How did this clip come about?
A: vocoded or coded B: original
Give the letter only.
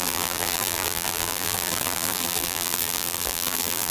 A